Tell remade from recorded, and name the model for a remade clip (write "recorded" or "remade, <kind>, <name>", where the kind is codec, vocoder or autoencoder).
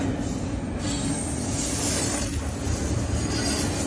recorded